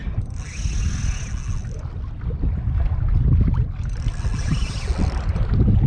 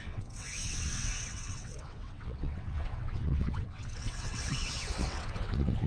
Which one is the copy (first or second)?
second